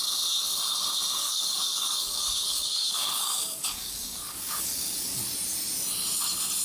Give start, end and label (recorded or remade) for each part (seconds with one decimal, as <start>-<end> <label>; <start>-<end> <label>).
0.0-1.2 recorded; 1.2-5.2 remade; 5.2-6.6 recorded